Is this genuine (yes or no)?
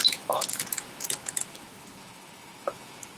no